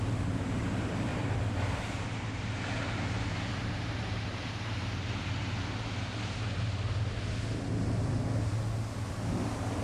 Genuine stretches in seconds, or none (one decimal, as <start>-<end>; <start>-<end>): 1.1-3.5; 4.3-9.8